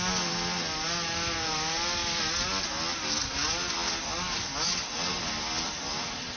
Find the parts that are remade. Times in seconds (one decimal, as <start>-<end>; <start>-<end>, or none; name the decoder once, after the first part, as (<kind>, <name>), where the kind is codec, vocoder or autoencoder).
none